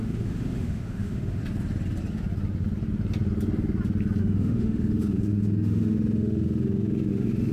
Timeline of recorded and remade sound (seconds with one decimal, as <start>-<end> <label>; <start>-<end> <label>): 0.0-1.4 remade; 1.4-4.2 recorded; 4.2-7.5 remade